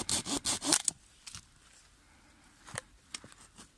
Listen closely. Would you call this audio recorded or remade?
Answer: recorded